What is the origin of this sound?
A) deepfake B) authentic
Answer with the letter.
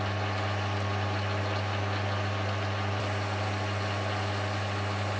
B